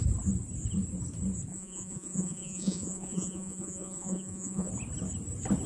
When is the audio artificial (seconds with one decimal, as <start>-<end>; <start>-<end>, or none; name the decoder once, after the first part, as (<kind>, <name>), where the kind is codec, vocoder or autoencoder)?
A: 1.5-4.7 (vocoder, Vocos)